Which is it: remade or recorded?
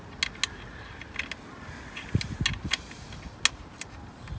recorded